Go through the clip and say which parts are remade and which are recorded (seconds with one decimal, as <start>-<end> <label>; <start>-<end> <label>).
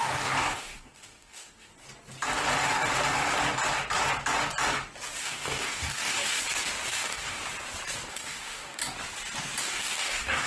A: 0.0-1.7 remade; 1.7-5.2 recorded; 5.2-6.4 remade; 6.4-6.9 recorded; 6.9-7.4 remade; 7.4-8.1 recorded; 8.1-8.8 remade; 8.8-9.6 recorded; 9.6-10.5 remade